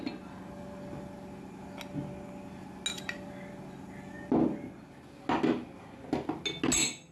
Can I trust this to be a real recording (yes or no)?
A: yes